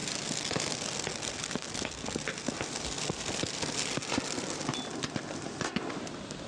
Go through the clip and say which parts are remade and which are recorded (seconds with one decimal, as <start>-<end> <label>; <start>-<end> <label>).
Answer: 0.0-0.6 remade; 0.6-6.5 recorded